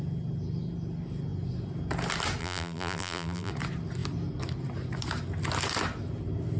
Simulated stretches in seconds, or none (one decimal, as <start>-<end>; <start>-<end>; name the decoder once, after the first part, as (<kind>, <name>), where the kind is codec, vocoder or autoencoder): 2.4-3.5 (vocoder, BigVGAN v2)